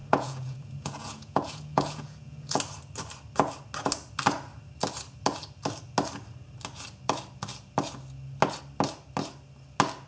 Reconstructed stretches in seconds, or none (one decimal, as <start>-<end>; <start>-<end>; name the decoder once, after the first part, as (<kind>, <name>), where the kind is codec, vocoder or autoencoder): 0.0-2.6 (vocoder, Vocos)